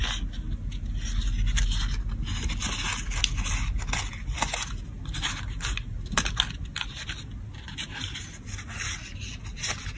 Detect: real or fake real